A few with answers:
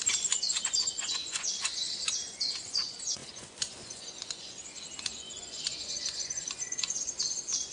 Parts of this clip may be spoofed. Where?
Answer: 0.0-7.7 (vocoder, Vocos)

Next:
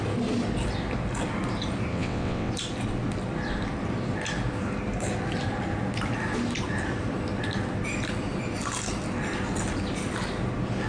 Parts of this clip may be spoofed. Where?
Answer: 1.9-2.5 (vocoder, WaveNeXt)

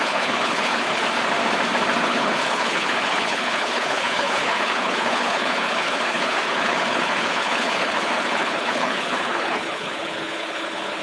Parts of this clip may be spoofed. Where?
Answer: 0.0-1.0 (codec, HILCodec); 2.0-11.0

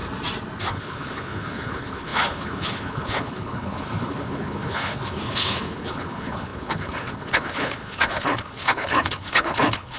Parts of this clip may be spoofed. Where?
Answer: 0.6-10.0 (codec, HILCodec)

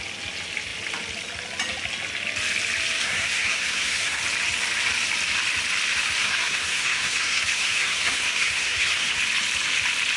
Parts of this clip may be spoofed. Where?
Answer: 3.0-4.2 (codec, SNAC); 6.2-9.2

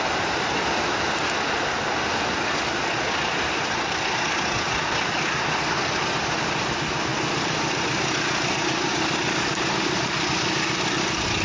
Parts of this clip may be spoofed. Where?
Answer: none

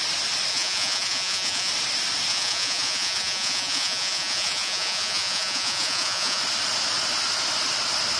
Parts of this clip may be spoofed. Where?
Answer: 0.5-1.7 (vocoder, Vocos); 2.3-6.4